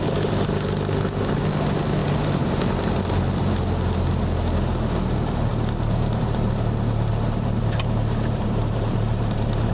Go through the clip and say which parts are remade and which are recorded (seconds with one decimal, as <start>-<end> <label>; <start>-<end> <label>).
0.0-2.0 recorded; 2.0-3.5 remade; 3.5-5.5 recorded; 5.5-9.7 remade